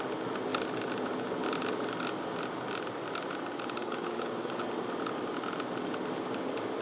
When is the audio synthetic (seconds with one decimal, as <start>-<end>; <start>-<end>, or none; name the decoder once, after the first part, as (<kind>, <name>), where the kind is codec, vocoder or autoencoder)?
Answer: 3.8-4.6 (codec, DAC)